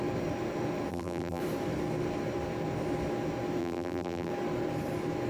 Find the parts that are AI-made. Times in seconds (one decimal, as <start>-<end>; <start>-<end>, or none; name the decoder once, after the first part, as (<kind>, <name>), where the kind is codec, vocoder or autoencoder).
0.9-1.4 (vocoder, BigVGAN v2); 3.6-4.3